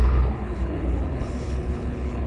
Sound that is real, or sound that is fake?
fake